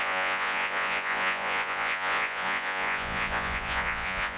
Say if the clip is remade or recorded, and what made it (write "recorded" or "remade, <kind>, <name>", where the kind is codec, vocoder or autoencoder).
remade, vocoder, Vocos